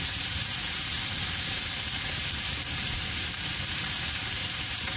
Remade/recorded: remade